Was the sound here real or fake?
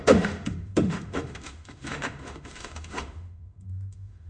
fake